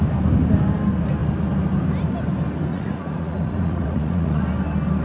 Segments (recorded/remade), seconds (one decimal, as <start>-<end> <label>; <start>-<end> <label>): 0.0-2.7 recorded; 2.7-4.4 remade; 4.4-5.0 recorded